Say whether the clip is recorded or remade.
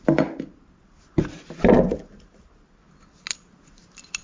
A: recorded